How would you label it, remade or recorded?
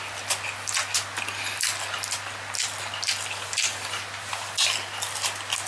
recorded